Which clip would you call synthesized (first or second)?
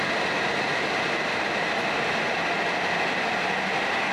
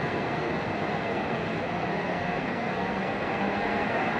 second